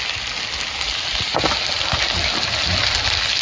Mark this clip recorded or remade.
recorded